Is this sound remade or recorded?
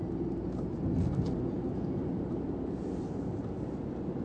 recorded